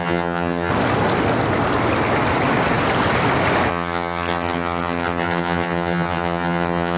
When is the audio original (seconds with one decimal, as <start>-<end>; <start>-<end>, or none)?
0.7-3.7